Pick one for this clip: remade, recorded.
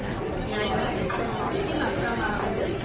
recorded